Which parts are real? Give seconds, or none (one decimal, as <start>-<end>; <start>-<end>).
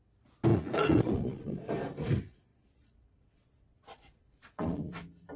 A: 0.0-0.5; 1.7-2.5; 4.9-5.4